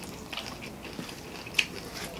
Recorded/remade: recorded